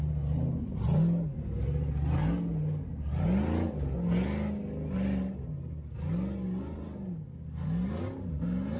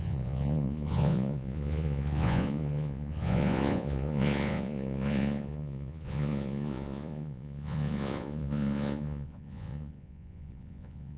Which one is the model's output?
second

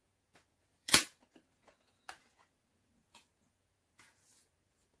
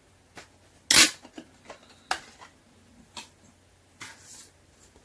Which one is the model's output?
first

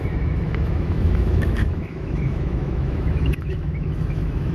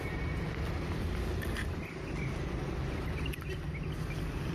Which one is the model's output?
first